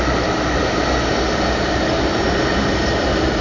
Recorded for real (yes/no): yes